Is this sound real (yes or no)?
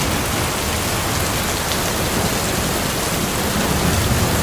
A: yes